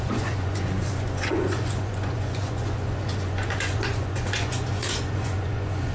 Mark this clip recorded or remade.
remade